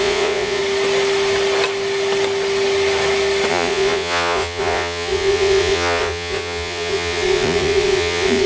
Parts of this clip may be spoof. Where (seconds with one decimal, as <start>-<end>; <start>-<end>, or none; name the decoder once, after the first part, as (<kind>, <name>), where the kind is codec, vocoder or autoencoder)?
0.0-0.6 (vocoder, Vocos); 3.5-8.5